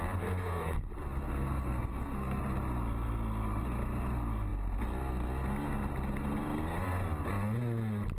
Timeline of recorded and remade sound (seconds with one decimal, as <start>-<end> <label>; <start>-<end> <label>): 0.0-0.4 recorded; 0.4-0.9 remade; 0.9-1.3 recorded; 1.3-2.4 remade; 2.4-8.2 recorded

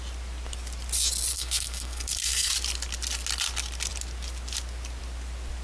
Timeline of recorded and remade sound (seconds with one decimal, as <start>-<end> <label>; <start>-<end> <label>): 0.0-1.3 recorded; 1.3-2.5 remade; 2.5-5.6 recorded

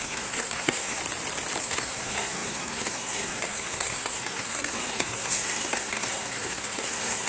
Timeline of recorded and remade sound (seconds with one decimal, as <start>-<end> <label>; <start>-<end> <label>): 0.0-1.0 remade; 1.0-1.6 recorded; 1.6-7.3 remade

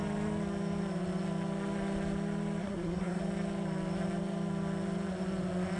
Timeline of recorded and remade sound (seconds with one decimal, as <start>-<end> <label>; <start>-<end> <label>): 0.0-2.6 recorded; 2.6-3.2 remade; 3.2-5.8 recorded